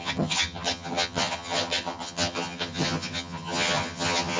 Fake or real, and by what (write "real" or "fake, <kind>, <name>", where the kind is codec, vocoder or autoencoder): fake, vocoder, HiFi-GAN